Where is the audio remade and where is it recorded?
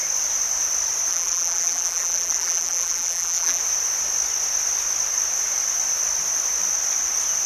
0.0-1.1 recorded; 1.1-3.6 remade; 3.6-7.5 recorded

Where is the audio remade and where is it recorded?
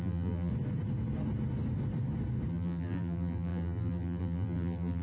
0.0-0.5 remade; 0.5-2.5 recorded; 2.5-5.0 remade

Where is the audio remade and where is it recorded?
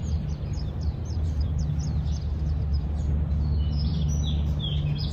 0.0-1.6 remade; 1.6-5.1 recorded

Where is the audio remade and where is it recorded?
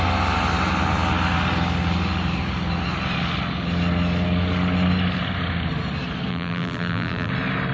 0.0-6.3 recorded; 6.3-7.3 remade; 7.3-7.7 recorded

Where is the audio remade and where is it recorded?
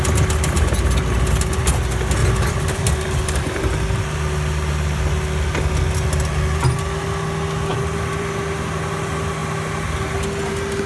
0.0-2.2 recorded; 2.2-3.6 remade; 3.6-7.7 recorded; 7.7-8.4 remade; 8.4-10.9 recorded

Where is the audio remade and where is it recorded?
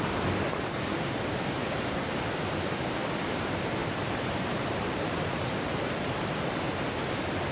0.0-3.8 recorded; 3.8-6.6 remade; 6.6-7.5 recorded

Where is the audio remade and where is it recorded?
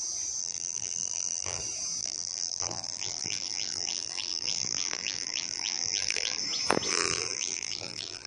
0.0-0.4 recorded; 0.4-1.6 remade; 1.6-2.0 recorded; 2.0-6.4 remade; 6.4-6.9 recorded; 6.9-8.3 remade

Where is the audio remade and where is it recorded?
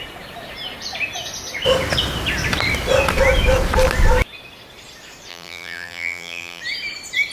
0.0-5.3 recorded; 5.3-6.6 remade; 6.6-7.3 recorded